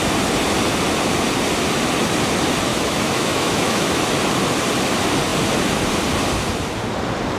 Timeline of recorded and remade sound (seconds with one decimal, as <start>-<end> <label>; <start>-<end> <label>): 0.0-2.7 recorded; 2.7-4.0 remade; 4.0-7.4 recorded